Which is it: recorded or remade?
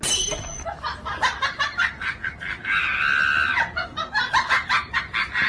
recorded